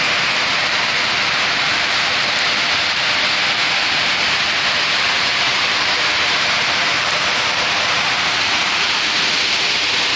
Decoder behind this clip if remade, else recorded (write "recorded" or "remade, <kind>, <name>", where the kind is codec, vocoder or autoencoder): remade, vocoder, BigVGAN v2